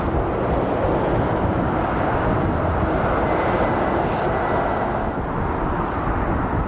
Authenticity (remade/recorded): recorded